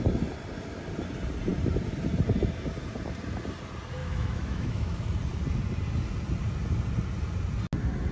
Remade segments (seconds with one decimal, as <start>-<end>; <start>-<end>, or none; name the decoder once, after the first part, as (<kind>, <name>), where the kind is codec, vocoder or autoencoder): 4.0-5.0 (autoencoder, DAC-VAE)